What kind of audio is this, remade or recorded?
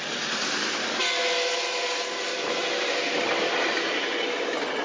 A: recorded